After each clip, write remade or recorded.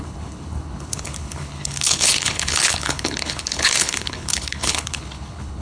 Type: remade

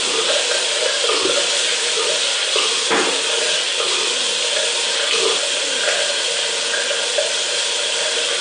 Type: recorded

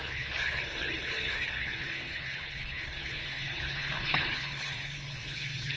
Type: remade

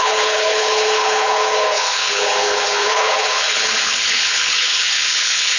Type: remade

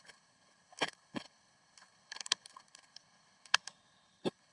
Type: remade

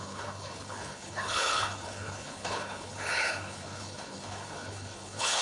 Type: remade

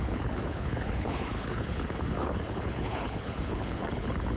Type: remade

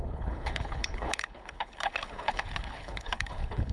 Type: remade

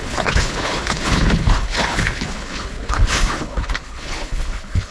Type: remade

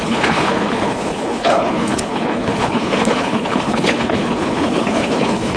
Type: remade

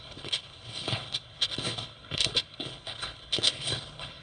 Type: remade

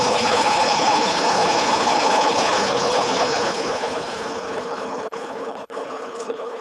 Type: remade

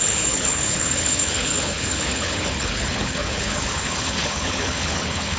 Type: remade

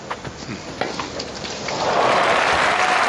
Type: recorded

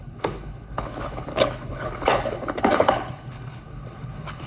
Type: remade